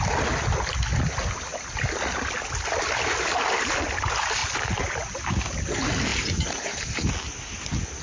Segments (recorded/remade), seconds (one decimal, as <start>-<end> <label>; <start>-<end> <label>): 0.0-6.1 recorded; 6.1-7.1 remade; 7.1-8.0 recorded